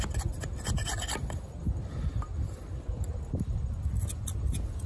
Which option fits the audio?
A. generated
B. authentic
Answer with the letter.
B